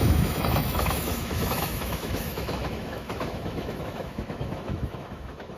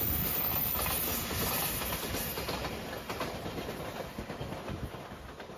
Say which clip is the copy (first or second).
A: first